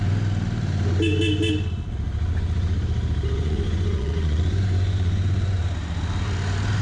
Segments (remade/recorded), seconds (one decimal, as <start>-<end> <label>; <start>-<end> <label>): 0.0-3.4 recorded; 3.4-5.6 remade; 5.6-6.8 recorded